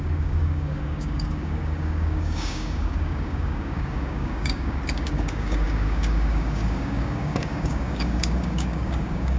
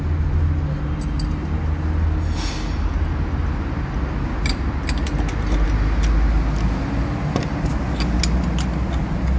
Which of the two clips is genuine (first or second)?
second